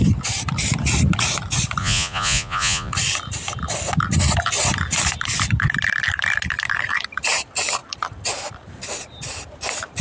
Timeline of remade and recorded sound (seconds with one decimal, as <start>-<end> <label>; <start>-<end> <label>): 0.0-1.8 recorded; 1.8-2.9 remade; 2.9-10.0 recorded